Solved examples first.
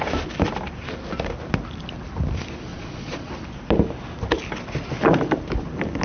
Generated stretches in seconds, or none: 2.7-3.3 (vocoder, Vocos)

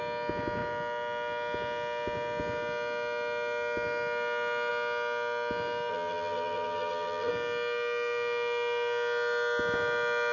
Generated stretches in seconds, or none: 5.9-7.3 (vocoder, BigVGAN v2)

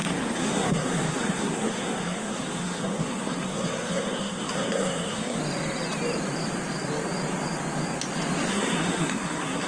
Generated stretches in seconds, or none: 0.0-5.4 (codec, SNAC); 8.5-9.7